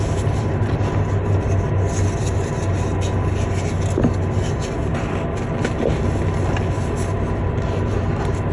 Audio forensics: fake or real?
real